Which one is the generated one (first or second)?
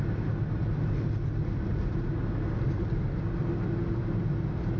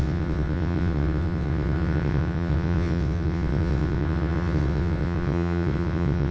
second